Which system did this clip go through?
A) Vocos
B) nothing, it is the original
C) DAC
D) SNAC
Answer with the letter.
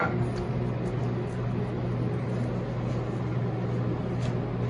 B